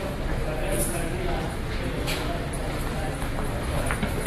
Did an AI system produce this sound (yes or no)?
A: no